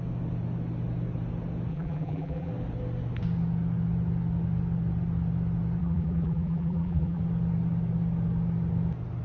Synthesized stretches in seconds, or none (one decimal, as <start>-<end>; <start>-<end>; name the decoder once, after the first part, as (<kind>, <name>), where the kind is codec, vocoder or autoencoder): 1.7-2.5 (vocoder, BigVGAN v2); 5.8-7.2